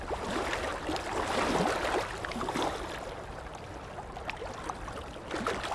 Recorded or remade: recorded